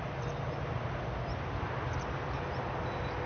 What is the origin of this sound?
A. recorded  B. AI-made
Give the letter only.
A